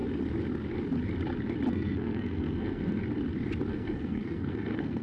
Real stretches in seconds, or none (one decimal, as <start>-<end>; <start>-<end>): 0.0-1.7; 3.0-3.7